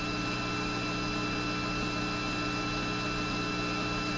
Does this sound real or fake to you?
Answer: real